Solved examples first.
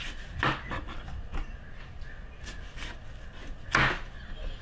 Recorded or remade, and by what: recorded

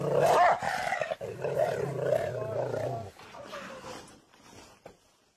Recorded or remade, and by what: recorded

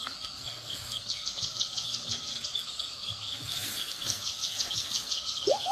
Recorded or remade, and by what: remade, codec, SNAC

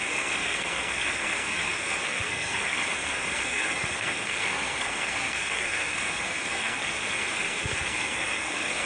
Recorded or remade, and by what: remade, codec, SNAC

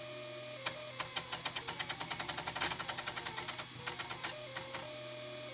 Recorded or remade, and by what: recorded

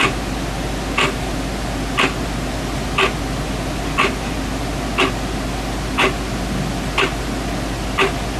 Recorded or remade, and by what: recorded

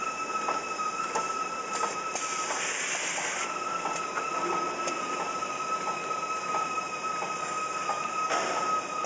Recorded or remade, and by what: recorded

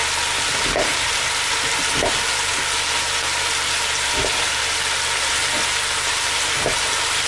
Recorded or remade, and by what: recorded